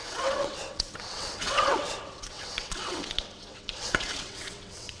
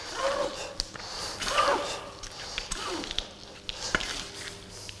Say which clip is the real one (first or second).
second